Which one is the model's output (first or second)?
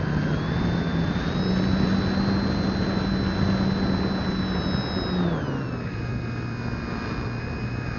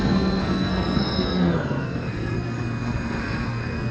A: second